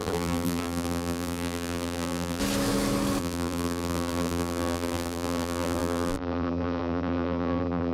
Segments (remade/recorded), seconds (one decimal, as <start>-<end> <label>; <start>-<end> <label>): 0.0-2.4 remade; 2.4-3.2 recorded; 3.2-7.9 remade